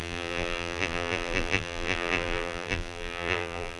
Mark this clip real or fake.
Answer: fake